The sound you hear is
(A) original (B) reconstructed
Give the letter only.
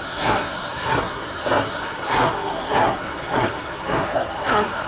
B